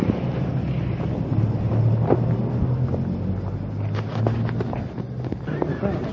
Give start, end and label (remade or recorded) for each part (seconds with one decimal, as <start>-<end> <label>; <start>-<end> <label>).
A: 0.0-6.1 recorded